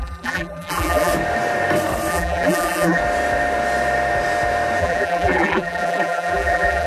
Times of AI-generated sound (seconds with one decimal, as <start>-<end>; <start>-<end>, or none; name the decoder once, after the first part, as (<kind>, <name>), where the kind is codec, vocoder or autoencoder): 0.0-1.1 (vocoder, BigVGAN v2); 2.1-3.0; 4.8-6.9